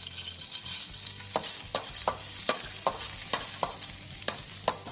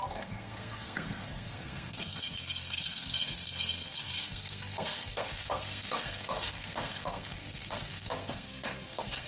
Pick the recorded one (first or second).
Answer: first